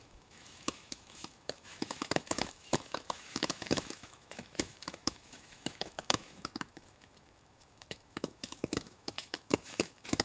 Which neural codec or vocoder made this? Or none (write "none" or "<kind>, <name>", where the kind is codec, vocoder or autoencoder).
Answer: autoencoder, DAC-VAE